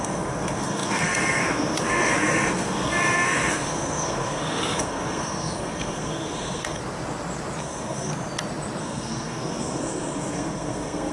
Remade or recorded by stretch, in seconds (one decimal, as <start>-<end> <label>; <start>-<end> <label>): 0.0-6.8 remade; 6.8-7.6 recorded; 7.6-8.1 remade; 8.1-8.8 recorded; 8.8-11.1 remade